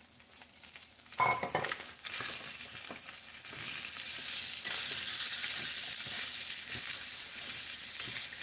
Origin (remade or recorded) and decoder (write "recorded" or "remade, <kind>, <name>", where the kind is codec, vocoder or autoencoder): recorded